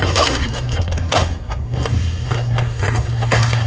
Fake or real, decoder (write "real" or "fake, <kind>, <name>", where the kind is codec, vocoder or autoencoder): fake, codec, SNAC